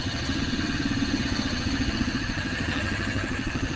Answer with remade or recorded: remade